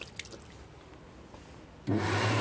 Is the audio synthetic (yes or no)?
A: no